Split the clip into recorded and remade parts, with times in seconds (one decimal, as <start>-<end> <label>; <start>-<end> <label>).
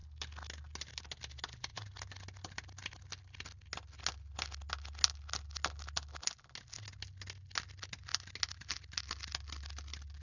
0.0-10.2 recorded